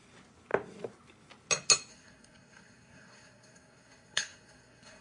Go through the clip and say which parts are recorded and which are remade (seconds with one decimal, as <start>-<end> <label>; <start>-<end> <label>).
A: 0.0-1.9 recorded; 1.9-5.0 remade